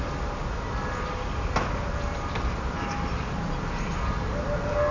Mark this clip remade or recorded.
recorded